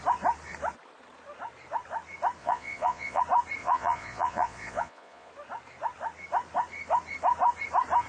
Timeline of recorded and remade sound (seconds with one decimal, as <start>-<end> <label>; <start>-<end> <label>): 0.0-2.4 recorded; 2.4-3.2 remade; 3.2-3.6 recorded; 3.6-5.3 remade; 5.3-8.1 recorded